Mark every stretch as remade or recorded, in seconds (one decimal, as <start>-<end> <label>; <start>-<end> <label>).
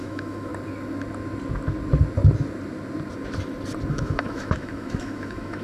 0.0-0.5 remade; 0.5-3.9 recorded; 3.9-5.6 remade